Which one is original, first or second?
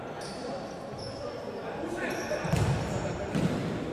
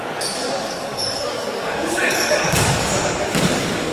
first